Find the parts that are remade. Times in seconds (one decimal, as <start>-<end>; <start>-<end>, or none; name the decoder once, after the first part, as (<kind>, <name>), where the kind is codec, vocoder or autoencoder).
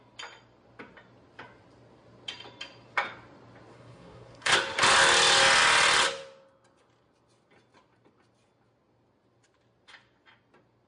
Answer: 3.7-4.5 (codec, SNAC)